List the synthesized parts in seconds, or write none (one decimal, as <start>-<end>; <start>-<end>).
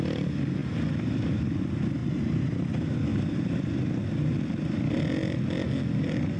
2.0-2.6; 3.1-4.0